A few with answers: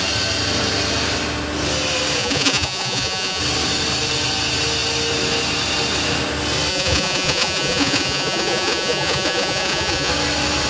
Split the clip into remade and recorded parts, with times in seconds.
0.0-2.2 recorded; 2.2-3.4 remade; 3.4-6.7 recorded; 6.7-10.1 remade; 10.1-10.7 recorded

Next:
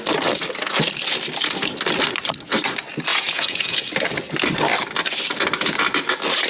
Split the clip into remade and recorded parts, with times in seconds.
0.0-3.1 recorded; 3.1-3.8 remade; 3.8-6.5 recorded

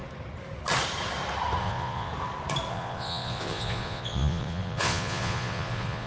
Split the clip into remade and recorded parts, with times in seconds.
0.0-1.6 recorded; 1.6-2.1 remade; 2.1-2.7 recorded; 2.7-6.1 remade

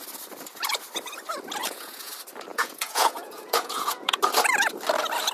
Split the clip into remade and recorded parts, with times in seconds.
0.0-1.6 recorded; 1.6-2.1 remade; 2.1-2.5 recorded; 2.5-4.2 remade; 4.2-5.3 recorded

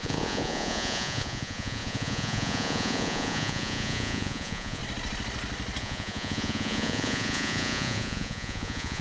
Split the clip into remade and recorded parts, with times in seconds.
0.0-4.8 remade; 4.8-5.8 recorded; 5.8-9.0 remade

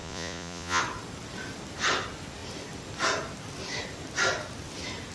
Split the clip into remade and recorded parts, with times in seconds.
0.0-0.8 remade; 0.8-5.1 recorded